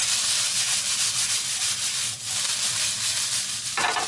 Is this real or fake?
real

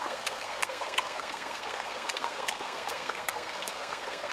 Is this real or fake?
fake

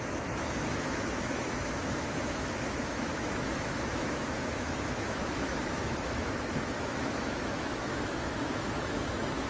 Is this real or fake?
fake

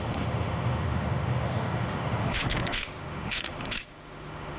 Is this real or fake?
fake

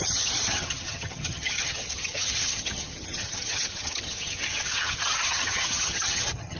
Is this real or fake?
fake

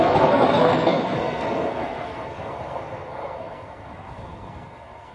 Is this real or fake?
fake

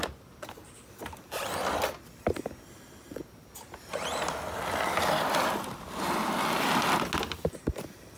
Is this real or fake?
real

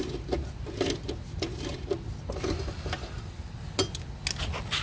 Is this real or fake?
real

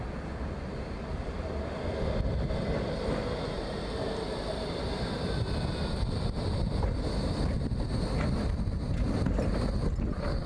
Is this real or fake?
real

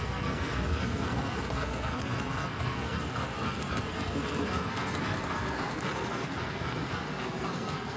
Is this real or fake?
fake